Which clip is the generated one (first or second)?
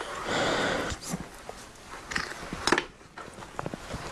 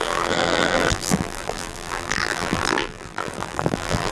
second